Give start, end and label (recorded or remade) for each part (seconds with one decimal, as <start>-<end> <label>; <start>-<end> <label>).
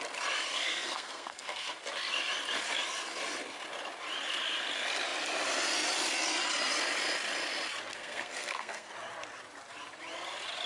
0.0-0.5 recorded; 0.5-1.8 remade; 1.8-7.9 recorded; 7.9-8.9 remade; 8.9-10.7 recorded